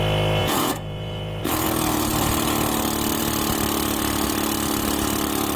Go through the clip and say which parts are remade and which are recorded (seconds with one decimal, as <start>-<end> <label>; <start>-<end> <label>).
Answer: 0.0-0.4 recorded; 0.4-1.4 remade; 1.4-5.6 recorded